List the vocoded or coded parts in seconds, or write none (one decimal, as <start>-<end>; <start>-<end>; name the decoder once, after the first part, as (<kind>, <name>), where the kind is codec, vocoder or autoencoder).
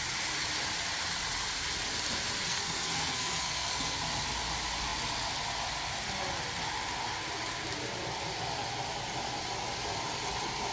2.5-4.0 (codec, SNAC)